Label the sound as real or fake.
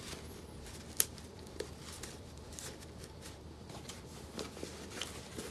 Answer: fake